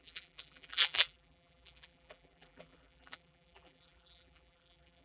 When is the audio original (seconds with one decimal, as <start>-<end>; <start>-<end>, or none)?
none